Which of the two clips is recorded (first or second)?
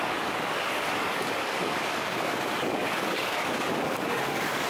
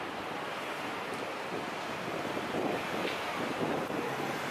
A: second